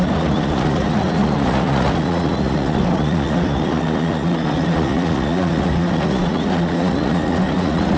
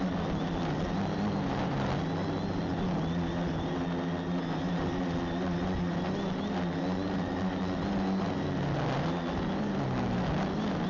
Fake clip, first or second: first